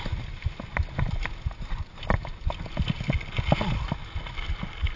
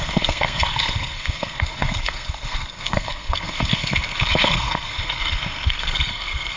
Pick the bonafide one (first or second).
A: first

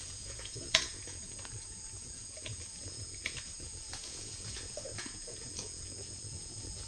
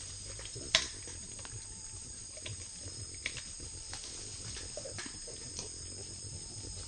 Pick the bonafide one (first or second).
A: second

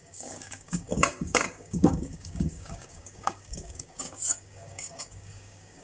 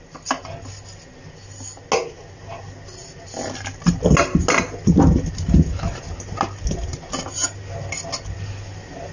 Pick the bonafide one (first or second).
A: second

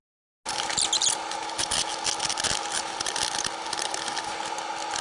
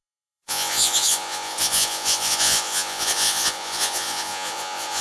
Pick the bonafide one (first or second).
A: first